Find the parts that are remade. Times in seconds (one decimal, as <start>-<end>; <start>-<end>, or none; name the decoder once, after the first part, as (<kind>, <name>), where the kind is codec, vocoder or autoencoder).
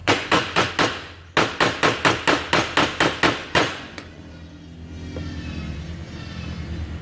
0.0-0.7 (vocoder, Vocos); 3.4-4.2